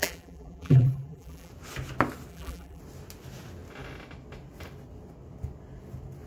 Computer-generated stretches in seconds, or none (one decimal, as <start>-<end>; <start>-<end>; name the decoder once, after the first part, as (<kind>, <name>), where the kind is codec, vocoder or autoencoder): 0.0-1.5 (vocoder, BigVGAN v2); 2.3-2.8

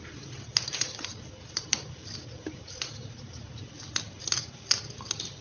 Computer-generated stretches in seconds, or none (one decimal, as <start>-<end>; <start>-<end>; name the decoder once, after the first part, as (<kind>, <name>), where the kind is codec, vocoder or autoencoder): 1.1-4.3 (vocoder, BigVGAN v2)

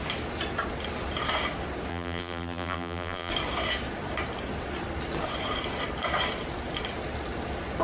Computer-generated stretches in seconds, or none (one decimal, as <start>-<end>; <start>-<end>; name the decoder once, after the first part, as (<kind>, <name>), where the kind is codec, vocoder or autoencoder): 1.9-3.3 (vocoder, BigVGAN v2)

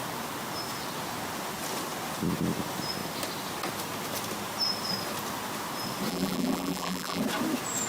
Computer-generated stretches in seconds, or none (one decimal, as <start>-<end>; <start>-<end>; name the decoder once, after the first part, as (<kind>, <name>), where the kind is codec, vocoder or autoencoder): 6.1-7.2 (vocoder, BigVGAN v2)

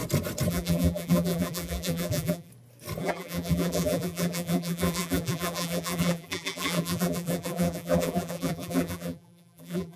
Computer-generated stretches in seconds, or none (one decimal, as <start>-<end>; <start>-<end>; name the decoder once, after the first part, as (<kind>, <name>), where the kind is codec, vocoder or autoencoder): 0.5-2.5 (vocoder, BigVGAN v2); 3.0-10.0